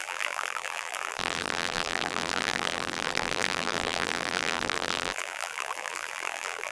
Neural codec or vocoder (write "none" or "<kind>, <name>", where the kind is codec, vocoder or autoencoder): vocoder, BigVGAN v2